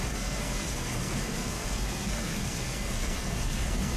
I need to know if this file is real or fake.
fake